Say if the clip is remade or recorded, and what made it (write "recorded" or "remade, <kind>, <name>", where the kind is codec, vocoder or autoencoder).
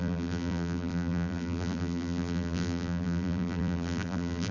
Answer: remade, vocoder, BigVGAN v2